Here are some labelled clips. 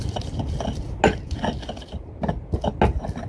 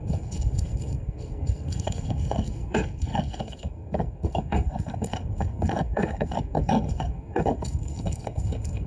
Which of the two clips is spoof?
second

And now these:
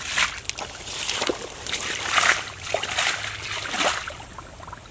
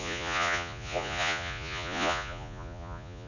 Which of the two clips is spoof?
second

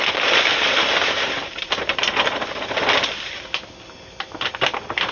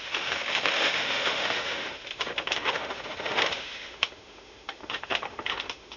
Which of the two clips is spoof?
second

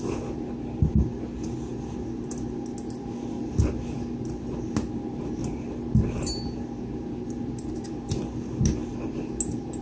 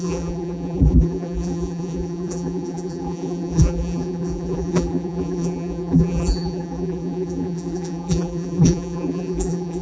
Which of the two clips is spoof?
second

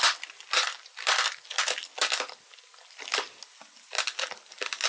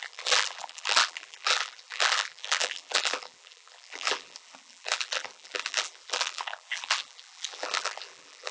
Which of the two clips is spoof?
second